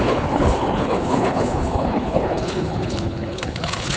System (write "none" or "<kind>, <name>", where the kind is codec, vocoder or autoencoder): codec, HILCodec